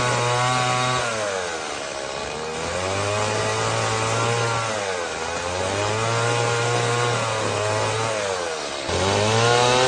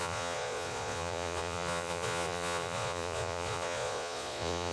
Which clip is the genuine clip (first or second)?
first